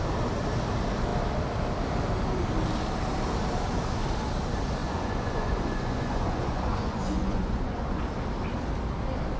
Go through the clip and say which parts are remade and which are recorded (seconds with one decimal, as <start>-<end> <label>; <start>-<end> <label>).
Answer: 0.0-4.8 recorded; 4.8-8.0 remade; 8.0-9.4 recorded